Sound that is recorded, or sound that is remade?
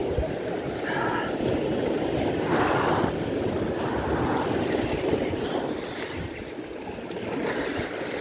recorded